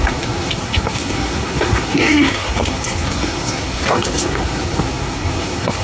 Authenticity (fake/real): fake